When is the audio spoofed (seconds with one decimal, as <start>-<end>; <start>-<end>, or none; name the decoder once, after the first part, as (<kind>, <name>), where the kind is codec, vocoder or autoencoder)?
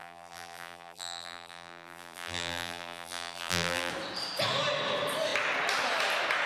0.0-3.9 (vocoder, BigVGAN v2)